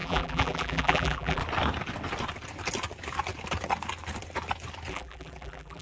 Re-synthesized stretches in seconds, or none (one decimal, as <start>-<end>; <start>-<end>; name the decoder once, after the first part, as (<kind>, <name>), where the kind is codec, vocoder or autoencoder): 0.0-1.4 (vocoder, BigVGAN v2); 4.9-5.8